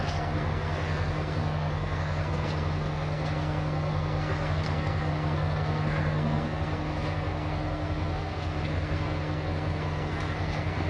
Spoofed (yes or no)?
yes